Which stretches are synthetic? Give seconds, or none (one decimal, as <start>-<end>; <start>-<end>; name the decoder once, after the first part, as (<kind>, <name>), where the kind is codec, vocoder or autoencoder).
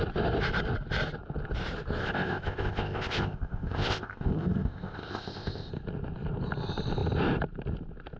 2.0-5.7 (codec, ZipCodec)